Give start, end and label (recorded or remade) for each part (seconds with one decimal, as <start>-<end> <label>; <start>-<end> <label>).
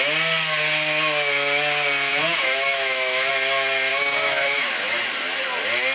0.0-2.1 recorded; 2.1-3.3 remade; 3.3-3.9 recorded; 3.9-5.0 remade; 5.0-5.9 recorded